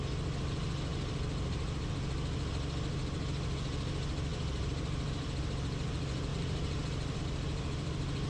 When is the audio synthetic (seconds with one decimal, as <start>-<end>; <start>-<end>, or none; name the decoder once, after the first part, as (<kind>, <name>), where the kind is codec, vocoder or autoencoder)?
0.9-1.9 (vocoder, BigVGAN v2); 4.3-5.4; 6.3-7.2